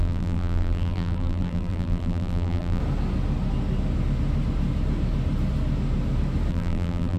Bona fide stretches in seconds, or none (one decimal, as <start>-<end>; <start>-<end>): 2.8-6.5